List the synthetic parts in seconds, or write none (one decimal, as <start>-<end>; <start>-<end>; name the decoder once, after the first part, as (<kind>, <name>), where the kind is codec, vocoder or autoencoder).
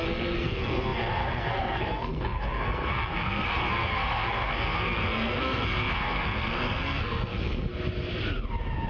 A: 0.0-7.7 (codec, SNAC)